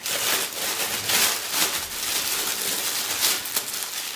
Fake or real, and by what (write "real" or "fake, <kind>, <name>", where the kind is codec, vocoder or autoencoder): real